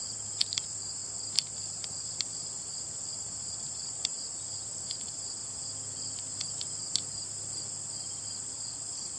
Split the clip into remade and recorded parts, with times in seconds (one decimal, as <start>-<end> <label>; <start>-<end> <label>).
0.0-1.0 remade; 1.0-1.7 recorded; 1.7-5.4 remade; 5.4-8.5 recorded; 8.5-9.2 remade